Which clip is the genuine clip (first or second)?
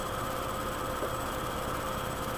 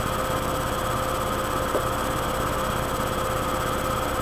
second